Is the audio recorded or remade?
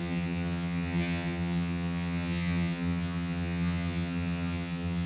remade